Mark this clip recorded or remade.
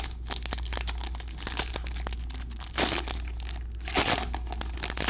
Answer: recorded